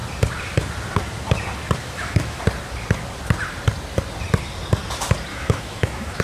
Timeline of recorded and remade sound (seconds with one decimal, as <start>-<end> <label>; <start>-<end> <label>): 0.0-1.8 recorded; 1.8-2.4 remade; 2.4-5.3 recorded; 5.3-6.2 remade